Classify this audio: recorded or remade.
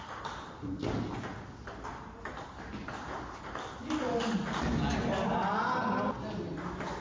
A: recorded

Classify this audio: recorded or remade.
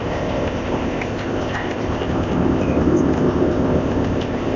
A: remade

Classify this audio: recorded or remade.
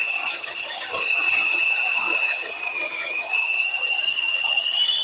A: remade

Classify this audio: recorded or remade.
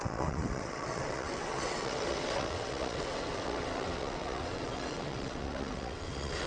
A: remade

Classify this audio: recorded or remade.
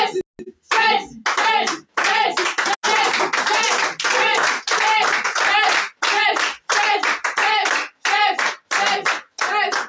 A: recorded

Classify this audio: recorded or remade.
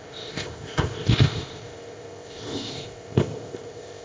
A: remade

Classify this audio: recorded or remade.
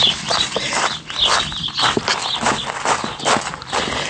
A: recorded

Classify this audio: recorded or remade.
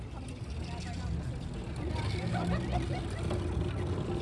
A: recorded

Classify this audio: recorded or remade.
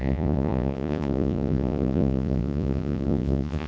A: remade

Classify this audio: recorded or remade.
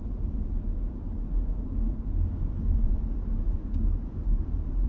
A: recorded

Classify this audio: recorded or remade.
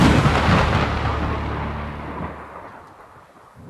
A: recorded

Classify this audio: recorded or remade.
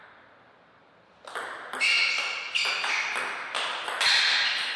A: recorded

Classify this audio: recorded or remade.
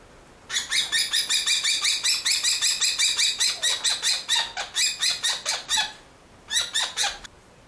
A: recorded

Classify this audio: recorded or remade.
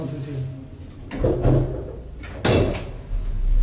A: recorded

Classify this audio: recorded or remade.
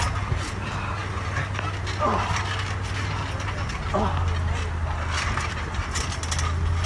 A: recorded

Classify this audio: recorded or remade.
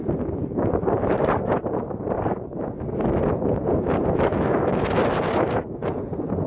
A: recorded